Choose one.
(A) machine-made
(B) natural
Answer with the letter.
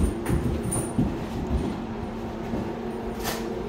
A